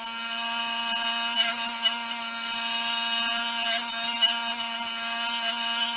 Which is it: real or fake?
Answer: real